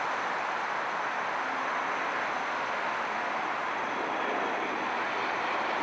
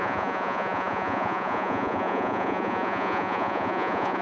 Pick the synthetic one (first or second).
second